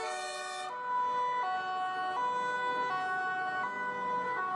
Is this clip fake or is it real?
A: real